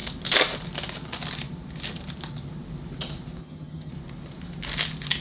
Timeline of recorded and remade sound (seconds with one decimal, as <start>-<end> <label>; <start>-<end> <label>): 0.0-3.4 recorded; 3.4-3.9 remade; 3.9-5.2 recorded